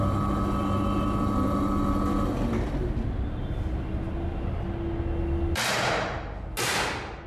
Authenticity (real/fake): real